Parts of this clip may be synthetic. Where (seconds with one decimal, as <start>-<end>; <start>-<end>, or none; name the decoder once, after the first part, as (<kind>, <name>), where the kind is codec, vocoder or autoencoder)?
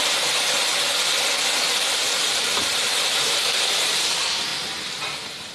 0.0-0.7 (vocoder, BigVGAN v2); 1.7-4.5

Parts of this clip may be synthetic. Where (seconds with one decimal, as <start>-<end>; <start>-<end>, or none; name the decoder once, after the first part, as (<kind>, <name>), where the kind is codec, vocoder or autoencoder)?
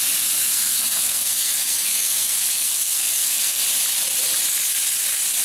0.4-3.6 (codec, SNAC)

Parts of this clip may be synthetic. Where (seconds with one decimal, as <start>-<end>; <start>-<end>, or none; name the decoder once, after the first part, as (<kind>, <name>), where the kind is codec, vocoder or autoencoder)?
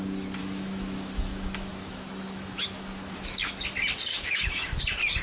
0.4-3.5 (autoencoder, DAC-VAE); 4.1-4.8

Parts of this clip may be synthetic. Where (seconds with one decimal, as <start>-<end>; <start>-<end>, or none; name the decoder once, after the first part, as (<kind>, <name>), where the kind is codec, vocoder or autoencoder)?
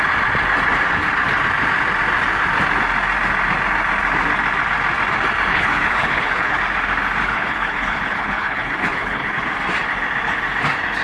5.5-6.6 (codec, HILCodec); 7.2-9.3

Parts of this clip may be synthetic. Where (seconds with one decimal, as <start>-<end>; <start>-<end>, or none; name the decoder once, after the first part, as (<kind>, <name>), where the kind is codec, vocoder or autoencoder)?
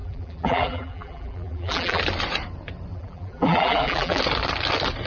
0.0-2.0 (vocoder, BigVGAN v2); 2.9-4.2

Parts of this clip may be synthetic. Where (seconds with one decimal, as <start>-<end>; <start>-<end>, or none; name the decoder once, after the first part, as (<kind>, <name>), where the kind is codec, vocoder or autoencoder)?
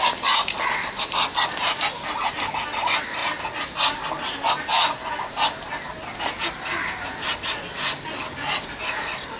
none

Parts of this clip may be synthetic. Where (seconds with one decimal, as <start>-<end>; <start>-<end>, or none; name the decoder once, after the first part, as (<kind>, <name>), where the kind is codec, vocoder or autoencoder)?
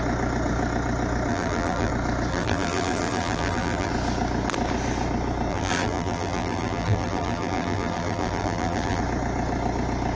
1.3-1.9 (vocoder, BigVGAN v2); 2.3-3.9; 5.5-9.0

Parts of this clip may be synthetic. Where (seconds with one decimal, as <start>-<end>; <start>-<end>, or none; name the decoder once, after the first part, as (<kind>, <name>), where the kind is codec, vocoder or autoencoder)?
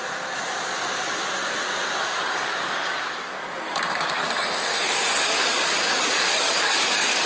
2.0-4.2 (codec, DAC); 5.4-7.3